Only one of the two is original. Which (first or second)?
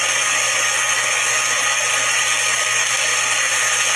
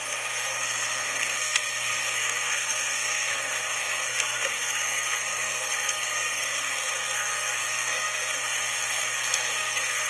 first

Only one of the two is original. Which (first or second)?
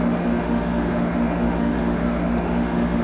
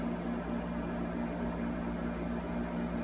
second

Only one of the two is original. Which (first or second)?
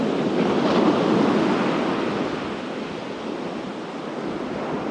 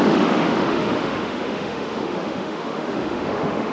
first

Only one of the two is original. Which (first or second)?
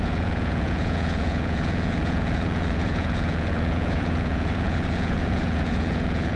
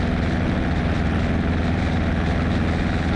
second